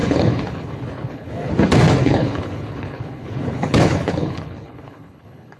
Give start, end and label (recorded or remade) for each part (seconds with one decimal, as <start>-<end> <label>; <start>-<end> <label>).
0.0-1.5 remade; 1.5-2.0 recorded; 2.0-5.6 remade